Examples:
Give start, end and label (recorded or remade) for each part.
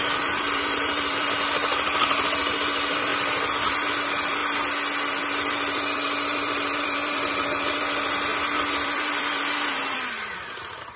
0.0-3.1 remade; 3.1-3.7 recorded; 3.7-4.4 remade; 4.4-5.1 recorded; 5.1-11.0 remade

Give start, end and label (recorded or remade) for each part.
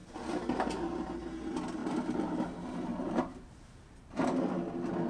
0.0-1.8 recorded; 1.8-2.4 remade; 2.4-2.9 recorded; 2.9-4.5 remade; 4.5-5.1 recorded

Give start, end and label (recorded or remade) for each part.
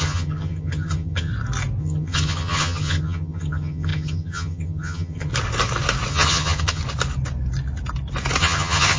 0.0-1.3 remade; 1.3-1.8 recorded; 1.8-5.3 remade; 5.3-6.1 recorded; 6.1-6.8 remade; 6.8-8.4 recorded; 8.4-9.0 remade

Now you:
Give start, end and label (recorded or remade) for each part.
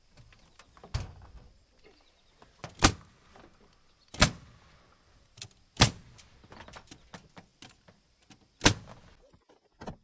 0.0-10.0 recorded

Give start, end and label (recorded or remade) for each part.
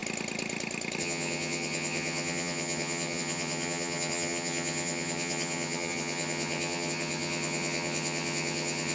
0.0-1.0 recorded; 1.0-8.9 remade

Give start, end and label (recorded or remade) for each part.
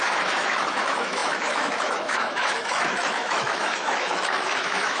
0.0-5.0 remade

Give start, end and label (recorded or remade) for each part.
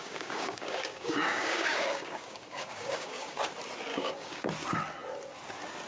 0.0-3.5 remade; 3.5-3.9 recorded; 3.9-4.5 remade; 4.5-5.9 recorded